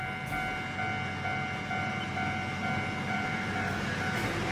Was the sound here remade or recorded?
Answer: recorded